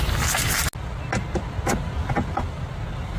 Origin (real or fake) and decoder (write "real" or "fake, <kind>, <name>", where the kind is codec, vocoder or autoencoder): real